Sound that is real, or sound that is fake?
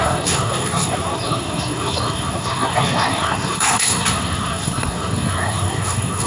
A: fake